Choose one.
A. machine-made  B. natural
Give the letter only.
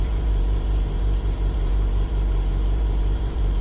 A